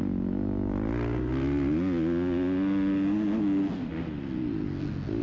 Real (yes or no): yes